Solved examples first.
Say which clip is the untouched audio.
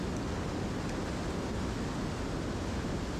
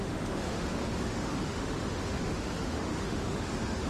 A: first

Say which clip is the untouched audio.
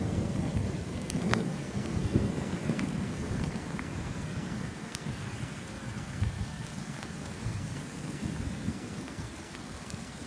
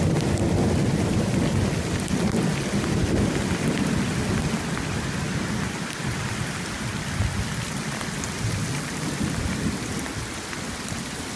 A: second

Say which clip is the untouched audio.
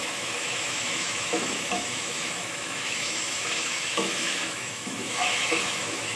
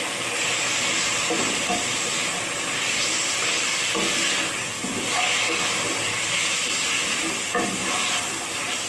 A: second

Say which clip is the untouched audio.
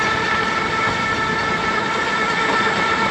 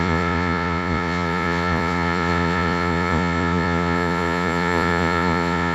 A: first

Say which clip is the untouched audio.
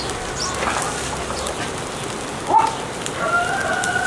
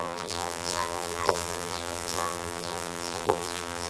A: first